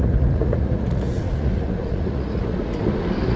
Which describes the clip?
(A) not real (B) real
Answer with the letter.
A